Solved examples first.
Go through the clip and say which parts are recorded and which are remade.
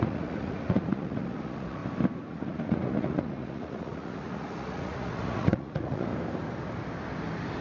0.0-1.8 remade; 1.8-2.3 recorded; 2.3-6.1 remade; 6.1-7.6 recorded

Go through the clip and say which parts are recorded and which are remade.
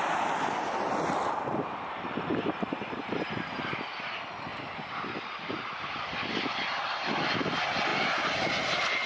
0.0-4.5 recorded; 4.5-5.4 remade; 5.4-9.1 recorded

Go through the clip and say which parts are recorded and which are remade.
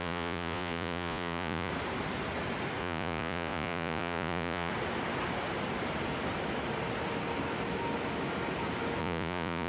0.0-1.7 remade; 1.7-2.8 recorded; 2.8-4.7 remade; 4.7-9.0 recorded; 9.0-9.7 remade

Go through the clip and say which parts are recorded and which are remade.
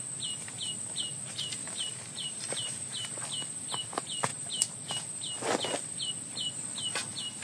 0.0-1.6 recorded; 1.6-3.1 remade; 3.1-7.4 recorded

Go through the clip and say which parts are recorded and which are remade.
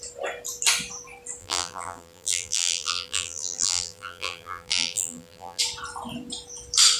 0.0-1.4 recorded; 1.4-5.6 remade; 5.6-7.0 recorded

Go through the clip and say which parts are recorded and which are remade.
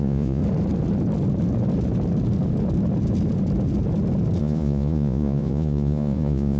0.0-0.4 remade; 0.4-4.4 recorded; 4.4-6.6 remade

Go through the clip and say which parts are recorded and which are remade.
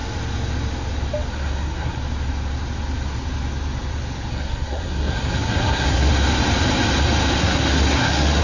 0.0-1.3 recorded; 1.3-2.0 remade; 2.0-4.3 recorded; 4.3-6.1 remade; 6.1-7.4 recorded; 7.4-8.4 remade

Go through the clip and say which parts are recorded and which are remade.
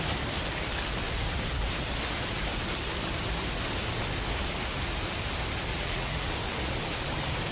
0.0-5.7 recorded; 5.7-6.3 remade; 6.3-7.5 recorded